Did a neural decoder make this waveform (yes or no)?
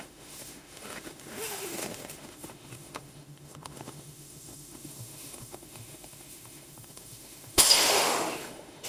yes